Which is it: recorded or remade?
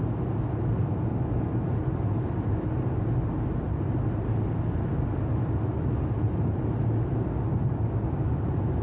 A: recorded